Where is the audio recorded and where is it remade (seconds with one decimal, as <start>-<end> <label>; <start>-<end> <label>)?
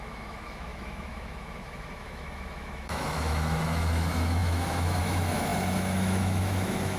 0.0-7.0 remade